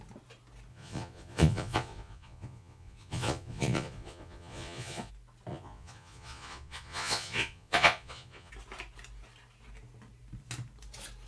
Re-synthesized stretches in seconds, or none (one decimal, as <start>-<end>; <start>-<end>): 0.7-5.1; 5.5-8.5